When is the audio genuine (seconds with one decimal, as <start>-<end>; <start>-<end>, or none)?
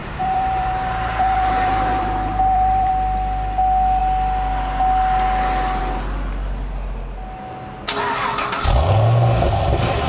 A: 2.9-10.1